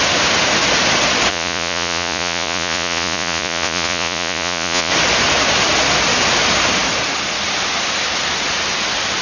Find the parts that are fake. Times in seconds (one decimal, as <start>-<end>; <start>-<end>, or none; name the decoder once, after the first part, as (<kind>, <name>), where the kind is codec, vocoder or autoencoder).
1.3-4.9 (vocoder, Vocos)